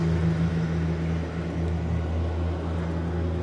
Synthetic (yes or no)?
no